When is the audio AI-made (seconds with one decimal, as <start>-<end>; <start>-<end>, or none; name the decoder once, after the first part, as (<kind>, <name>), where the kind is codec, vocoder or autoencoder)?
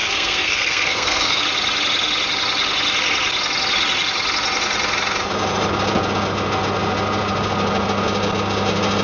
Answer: 0.0-1.4 (codec, SNAC)